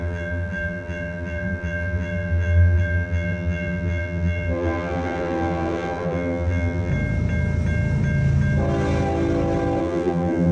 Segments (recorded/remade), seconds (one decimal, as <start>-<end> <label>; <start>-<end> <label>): 0.0-6.9 remade; 6.9-9.8 recorded; 9.8-10.5 remade